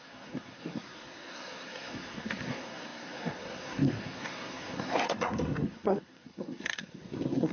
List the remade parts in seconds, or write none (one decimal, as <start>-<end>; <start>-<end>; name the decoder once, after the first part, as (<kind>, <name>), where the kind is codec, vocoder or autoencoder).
0.0-7.5 (codec, SNAC)